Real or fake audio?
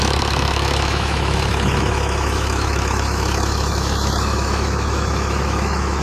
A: fake